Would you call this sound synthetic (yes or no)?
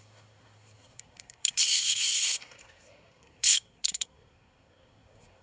yes